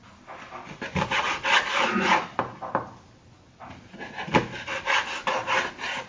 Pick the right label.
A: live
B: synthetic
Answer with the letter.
A